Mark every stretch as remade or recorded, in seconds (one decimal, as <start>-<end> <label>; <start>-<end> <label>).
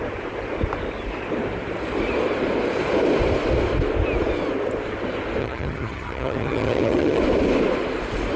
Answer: 0.0-5.4 recorded; 5.4-7.2 remade; 7.2-8.4 recorded